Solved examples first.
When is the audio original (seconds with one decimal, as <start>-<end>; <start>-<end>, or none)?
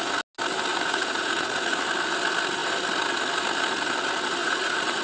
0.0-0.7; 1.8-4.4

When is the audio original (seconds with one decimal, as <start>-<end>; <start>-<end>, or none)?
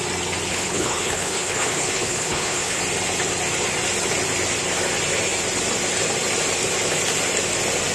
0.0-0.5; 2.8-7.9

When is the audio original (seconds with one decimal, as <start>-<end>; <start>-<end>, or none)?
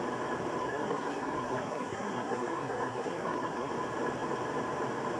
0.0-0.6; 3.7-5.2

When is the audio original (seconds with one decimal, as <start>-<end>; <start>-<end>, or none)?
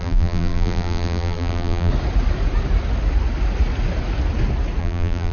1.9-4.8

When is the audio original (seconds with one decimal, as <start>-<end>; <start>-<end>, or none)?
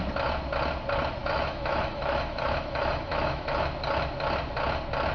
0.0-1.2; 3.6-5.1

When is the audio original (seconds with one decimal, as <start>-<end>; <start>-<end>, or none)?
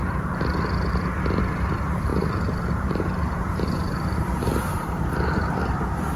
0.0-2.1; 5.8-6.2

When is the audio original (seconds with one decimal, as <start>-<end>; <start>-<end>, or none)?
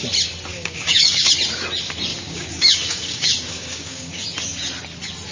0.0-0.5; 1.3-2.1; 4.2-5.3